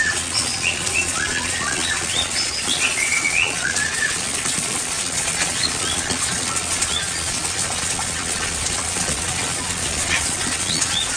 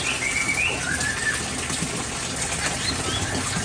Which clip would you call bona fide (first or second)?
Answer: second